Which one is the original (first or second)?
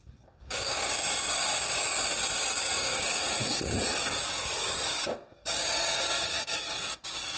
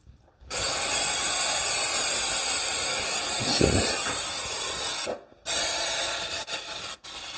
second